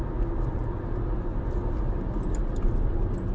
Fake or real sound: real